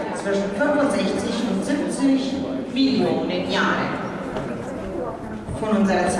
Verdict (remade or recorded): recorded